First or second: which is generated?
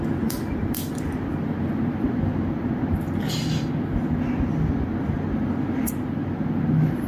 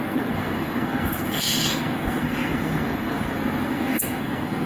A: second